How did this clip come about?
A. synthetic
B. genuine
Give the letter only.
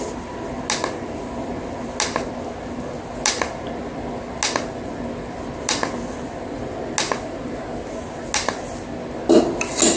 B